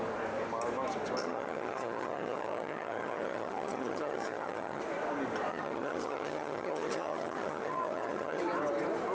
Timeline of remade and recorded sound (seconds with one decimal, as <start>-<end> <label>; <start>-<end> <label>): 0.0-1.2 recorded; 1.2-4.8 remade; 4.8-5.5 recorded; 5.5-8.4 remade; 8.4-9.1 recorded